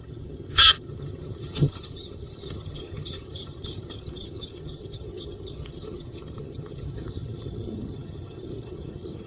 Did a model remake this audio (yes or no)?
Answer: yes